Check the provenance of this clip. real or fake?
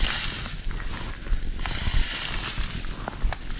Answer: real